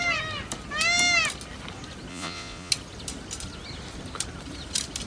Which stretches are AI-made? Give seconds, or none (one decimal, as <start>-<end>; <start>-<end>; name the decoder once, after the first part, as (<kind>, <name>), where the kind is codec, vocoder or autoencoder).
2.1-2.7 (vocoder, Vocos)